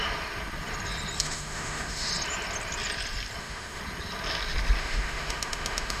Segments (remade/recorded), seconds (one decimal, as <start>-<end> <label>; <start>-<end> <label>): 0.0-1.2 recorded; 1.2-2.1 remade; 2.1-3.4 recorded; 3.4-3.8 remade; 3.8-4.8 recorded; 4.8-6.0 remade